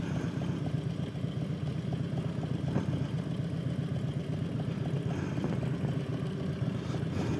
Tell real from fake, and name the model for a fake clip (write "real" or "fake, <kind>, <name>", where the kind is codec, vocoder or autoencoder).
real